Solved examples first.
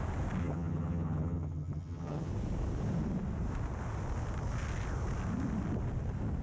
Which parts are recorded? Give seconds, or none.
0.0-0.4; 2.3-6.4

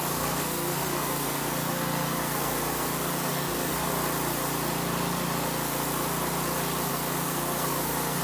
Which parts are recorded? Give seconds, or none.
3.9-6.9